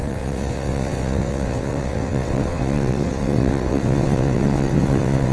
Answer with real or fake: fake